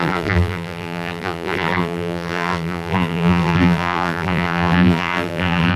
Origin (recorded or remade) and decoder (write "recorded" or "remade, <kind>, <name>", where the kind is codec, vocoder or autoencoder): remade, vocoder, BigVGAN v2